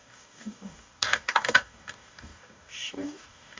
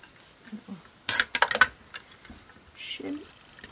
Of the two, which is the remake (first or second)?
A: first